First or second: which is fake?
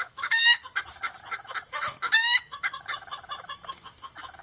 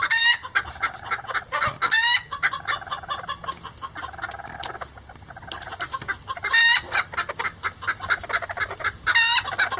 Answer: first